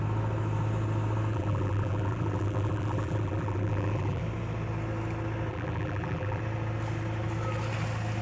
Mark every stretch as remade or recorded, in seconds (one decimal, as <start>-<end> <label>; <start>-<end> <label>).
0.0-1.3 recorded; 1.3-4.2 remade; 4.2-5.5 recorded; 5.5-6.4 remade; 6.4-8.2 recorded